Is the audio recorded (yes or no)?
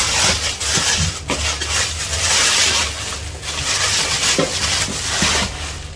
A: yes